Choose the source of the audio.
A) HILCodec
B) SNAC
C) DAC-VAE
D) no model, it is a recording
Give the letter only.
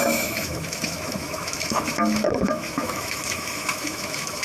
C